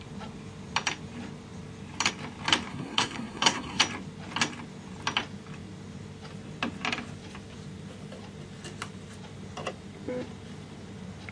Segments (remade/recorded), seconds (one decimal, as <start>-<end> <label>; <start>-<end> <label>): 0.0-2.7 recorded; 2.7-3.8 remade; 3.8-11.3 recorded